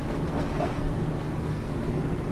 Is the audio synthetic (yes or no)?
yes